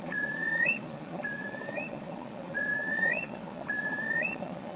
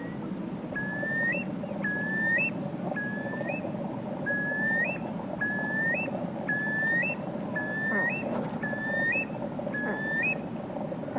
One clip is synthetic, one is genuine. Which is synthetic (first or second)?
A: first